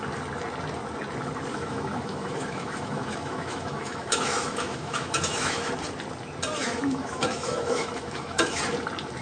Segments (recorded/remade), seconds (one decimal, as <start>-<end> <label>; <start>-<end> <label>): 0.0-1.5 recorded; 1.5-5.7 remade; 5.7-6.6 recorded; 6.6-8.6 remade; 8.6-9.2 recorded